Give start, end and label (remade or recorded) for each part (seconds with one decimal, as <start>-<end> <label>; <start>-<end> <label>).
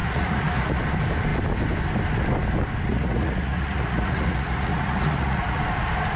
0.0-0.8 remade; 0.8-2.9 recorded; 2.9-5.6 remade; 5.6-6.2 recorded